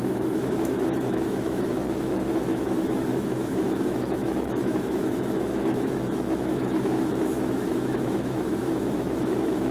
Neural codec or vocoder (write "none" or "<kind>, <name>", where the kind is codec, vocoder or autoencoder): autoencoder, DAC-VAE